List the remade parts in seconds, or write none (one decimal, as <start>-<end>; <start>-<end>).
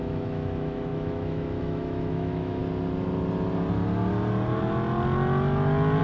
0.0-2.6